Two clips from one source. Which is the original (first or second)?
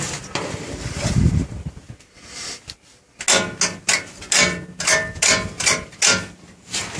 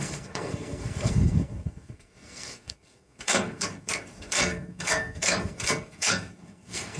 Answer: first